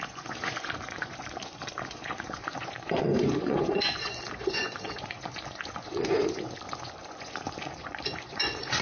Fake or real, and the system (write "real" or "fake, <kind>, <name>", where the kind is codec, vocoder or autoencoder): fake, vocoder, Vocos